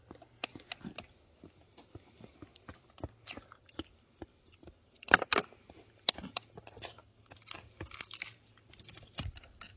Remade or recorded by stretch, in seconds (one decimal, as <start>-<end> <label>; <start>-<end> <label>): 0.0-9.8 recorded